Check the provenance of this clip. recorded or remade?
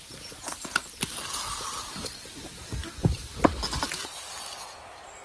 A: recorded